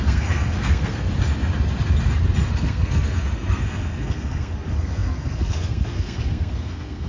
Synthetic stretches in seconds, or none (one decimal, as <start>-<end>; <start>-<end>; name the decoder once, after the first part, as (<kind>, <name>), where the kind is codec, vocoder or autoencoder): 0.0-1.1 (codec, SNAC); 2.5-7.1